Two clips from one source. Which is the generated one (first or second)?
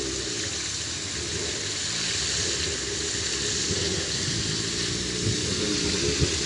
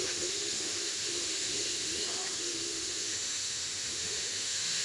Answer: second